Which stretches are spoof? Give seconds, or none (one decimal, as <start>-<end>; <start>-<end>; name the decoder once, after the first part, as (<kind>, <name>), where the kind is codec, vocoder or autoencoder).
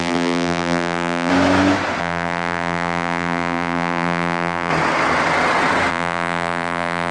0.0-1.3 (vocoder, BigVGAN v2); 2.0-4.7; 5.9-7.1